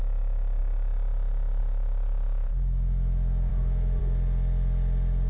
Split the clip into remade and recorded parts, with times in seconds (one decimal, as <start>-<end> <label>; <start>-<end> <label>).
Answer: 0.0-3.5 recorded; 3.5-4.0 remade; 4.0-5.3 recorded